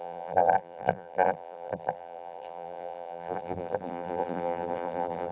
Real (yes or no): no